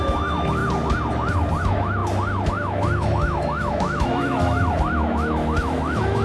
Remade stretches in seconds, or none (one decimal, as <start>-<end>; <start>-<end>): 0.0-0.6; 1.6-2.0; 2.5-6.2